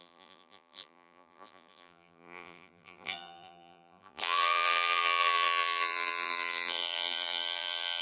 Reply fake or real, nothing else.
fake